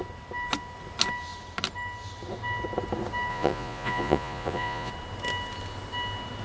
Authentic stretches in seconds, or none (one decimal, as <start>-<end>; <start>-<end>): 0.0-3.3; 4.9-6.4